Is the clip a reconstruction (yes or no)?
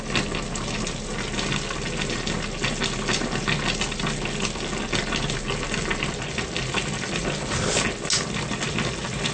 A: no